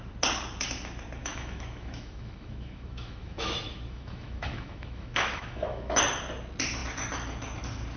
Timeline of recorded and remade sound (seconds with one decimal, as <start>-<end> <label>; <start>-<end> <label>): 0.0-1.2 recorded; 1.2-6.0 remade; 6.0-8.0 recorded